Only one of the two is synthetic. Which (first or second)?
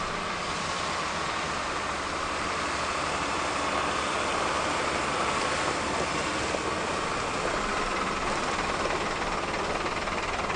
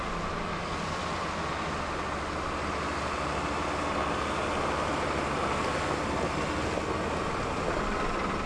first